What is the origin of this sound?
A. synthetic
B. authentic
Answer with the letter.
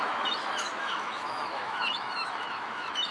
A